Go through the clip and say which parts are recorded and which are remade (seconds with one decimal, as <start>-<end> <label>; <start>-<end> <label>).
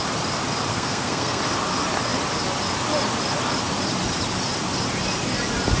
0.0-0.7 recorded; 0.7-1.4 remade; 1.4-5.8 recorded